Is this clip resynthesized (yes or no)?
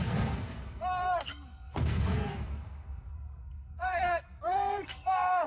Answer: yes